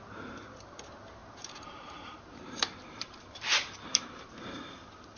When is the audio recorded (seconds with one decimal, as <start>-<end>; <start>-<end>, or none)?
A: 0.0-1.2; 4.3-5.2